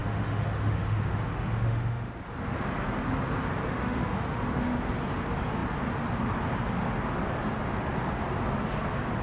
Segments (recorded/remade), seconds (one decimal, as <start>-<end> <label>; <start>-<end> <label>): 0.0-2.2 remade; 2.2-3.7 recorded; 3.7-4.9 remade; 4.9-9.2 recorded